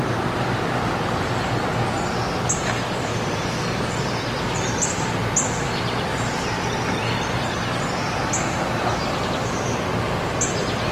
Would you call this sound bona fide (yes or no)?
yes